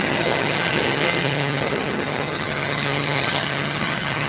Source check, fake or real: fake